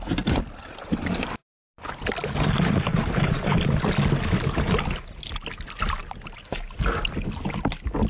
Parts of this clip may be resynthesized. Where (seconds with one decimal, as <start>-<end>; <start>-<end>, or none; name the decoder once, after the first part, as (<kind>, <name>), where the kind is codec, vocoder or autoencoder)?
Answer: none